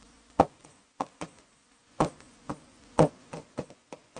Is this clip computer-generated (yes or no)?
yes